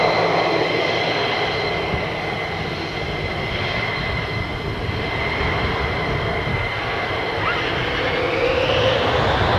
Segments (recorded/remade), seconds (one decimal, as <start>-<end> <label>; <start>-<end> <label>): 0.0-6.5 recorded; 6.5-7.1 remade; 7.1-9.6 recorded